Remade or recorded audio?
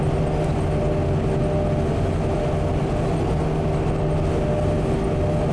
recorded